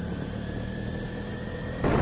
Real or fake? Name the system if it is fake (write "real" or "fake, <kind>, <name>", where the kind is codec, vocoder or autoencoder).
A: real